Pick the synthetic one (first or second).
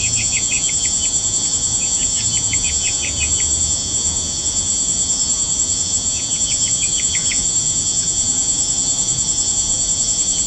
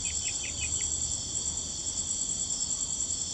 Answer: first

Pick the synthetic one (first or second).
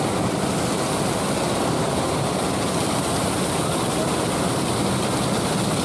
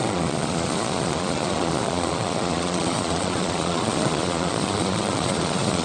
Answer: second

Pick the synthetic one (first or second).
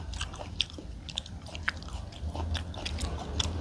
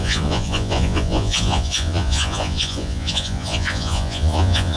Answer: second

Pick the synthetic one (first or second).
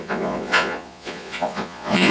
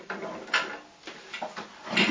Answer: first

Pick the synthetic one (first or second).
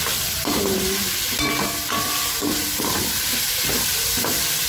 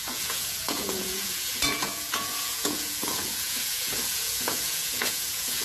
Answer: second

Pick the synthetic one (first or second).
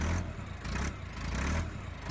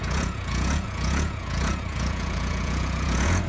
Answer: second